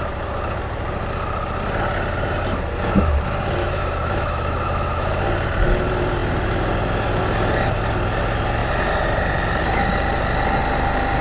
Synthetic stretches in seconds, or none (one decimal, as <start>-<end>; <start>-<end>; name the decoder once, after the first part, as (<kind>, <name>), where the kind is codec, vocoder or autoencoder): 3.6-5.2 (autoencoder, DAC-VAE)